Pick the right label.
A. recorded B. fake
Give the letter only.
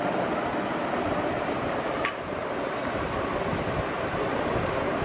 A